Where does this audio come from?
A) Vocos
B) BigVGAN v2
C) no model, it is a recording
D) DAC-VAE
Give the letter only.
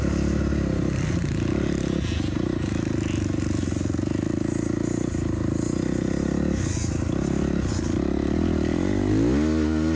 C